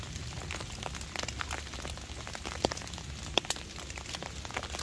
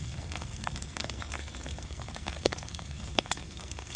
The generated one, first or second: second